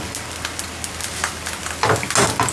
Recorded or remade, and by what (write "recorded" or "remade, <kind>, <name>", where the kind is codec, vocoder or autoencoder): recorded